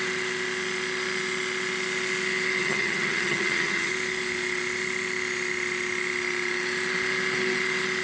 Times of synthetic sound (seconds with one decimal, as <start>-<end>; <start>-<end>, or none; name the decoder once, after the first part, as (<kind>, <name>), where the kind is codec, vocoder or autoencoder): 2.6-3.9 (vocoder, HiFi-GAN)